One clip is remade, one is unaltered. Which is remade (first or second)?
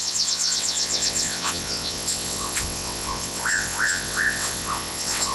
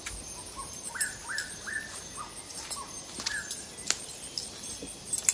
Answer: first